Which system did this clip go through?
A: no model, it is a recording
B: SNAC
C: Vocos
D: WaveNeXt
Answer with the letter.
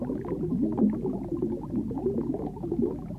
A